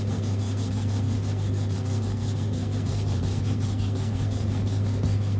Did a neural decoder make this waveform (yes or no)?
yes